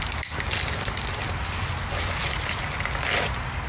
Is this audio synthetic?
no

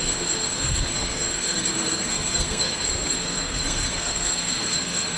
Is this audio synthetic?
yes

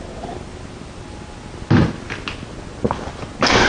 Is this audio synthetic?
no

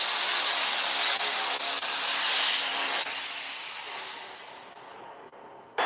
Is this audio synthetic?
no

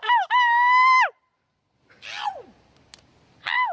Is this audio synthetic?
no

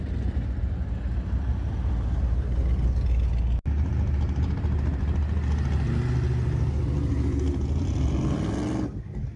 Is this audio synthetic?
no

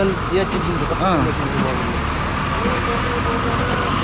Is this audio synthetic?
no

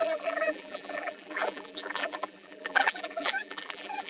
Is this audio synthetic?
yes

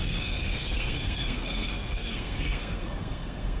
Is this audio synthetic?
yes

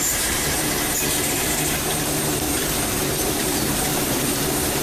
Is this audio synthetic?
yes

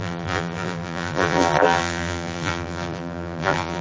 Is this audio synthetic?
yes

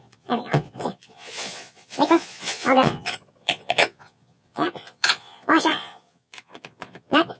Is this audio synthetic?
yes